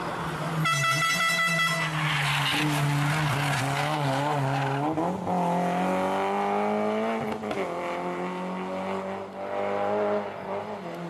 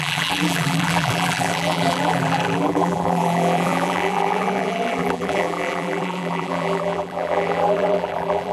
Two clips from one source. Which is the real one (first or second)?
first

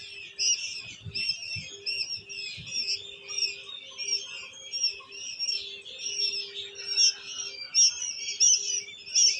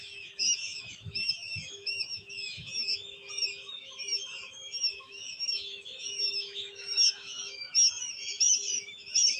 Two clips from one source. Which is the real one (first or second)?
first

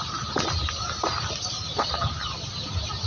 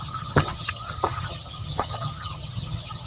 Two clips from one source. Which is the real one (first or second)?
first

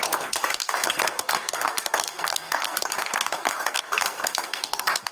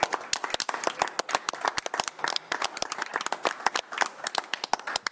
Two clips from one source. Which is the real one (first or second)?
second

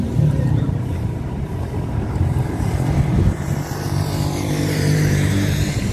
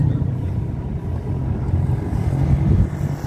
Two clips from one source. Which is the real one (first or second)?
second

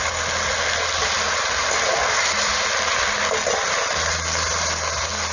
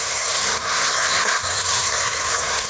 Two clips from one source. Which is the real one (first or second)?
first